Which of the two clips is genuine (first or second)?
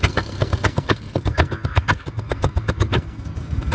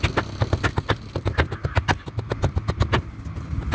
second